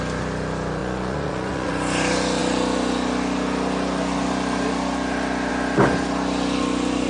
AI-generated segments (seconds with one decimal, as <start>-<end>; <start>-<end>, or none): 0.8-1.7